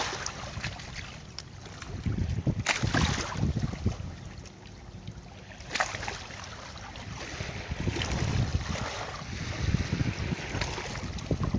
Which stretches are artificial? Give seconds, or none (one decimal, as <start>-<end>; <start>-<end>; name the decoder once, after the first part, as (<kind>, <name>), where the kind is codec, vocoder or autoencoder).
none